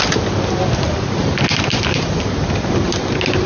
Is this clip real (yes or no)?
yes